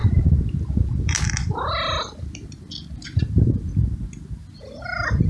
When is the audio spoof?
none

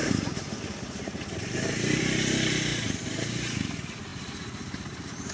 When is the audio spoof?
0.0-2.0; 4.1-5.3